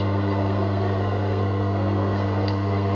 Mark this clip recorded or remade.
remade